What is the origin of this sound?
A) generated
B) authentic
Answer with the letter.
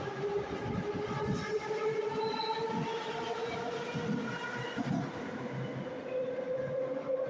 B